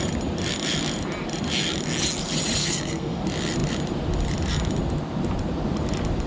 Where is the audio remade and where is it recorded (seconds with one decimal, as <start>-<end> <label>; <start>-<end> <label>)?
0.0-2.6 recorded; 2.6-3.2 remade; 3.2-6.3 recorded